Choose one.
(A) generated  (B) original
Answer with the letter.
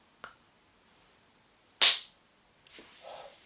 B